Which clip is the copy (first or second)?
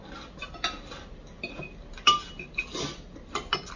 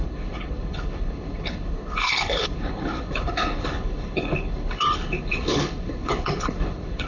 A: second